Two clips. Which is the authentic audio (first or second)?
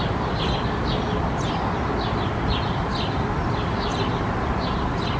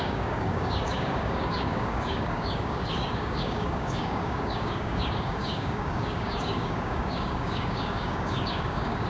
first